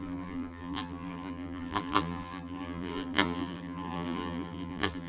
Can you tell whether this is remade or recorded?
remade